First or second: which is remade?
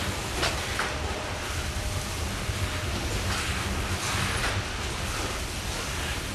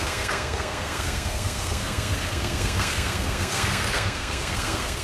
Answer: second